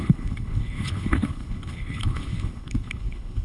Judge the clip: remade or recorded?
remade